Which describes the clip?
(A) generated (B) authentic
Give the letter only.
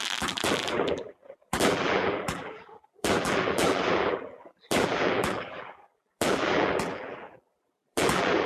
A